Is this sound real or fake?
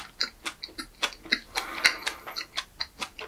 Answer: real